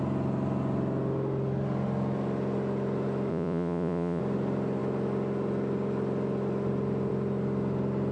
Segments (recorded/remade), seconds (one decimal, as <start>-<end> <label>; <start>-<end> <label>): 0.0-3.3 recorded; 3.3-4.2 remade; 4.2-8.1 recorded